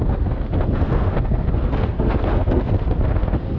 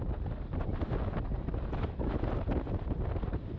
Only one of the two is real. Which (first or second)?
second